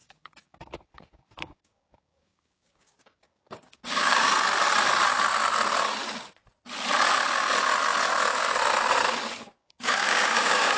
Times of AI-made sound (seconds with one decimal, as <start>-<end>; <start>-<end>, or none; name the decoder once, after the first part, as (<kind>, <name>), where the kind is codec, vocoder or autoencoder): 0.0-4.3 (codec, DAC); 9.6-10.8